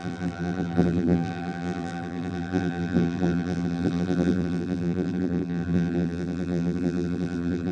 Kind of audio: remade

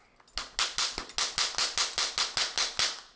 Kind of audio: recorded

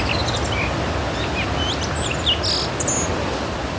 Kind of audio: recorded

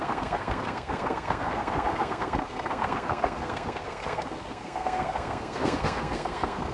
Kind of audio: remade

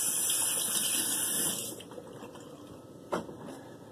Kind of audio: recorded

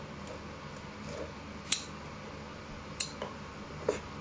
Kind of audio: recorded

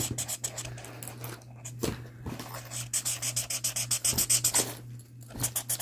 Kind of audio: recorded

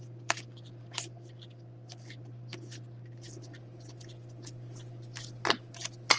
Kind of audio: recorded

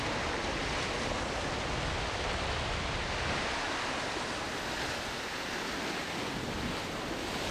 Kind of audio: recorded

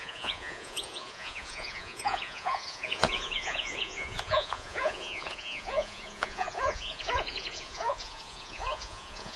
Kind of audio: remade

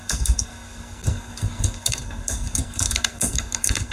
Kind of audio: remade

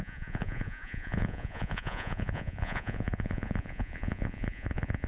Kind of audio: remade